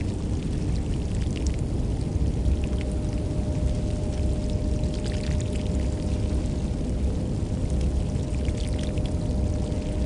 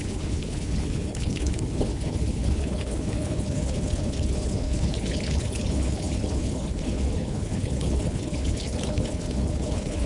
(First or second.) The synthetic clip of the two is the second